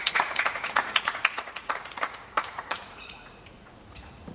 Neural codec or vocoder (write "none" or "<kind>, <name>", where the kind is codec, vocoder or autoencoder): vocoder, Vocos